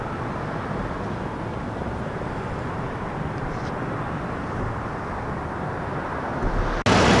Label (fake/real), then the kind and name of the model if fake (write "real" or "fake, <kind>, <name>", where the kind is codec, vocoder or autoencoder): real